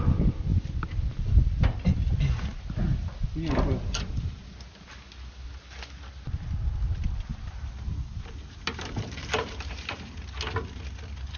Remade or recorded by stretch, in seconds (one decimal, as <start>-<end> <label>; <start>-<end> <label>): 0.0-3.7 recorded; 3.7-4.4 remade; 4.4-7.3 recorded; 7.3-10.2 remade; 10.2-11.4 recorded